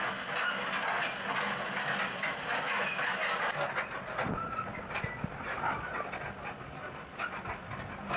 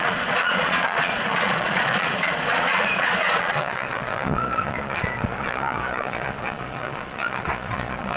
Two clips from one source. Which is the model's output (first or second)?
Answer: second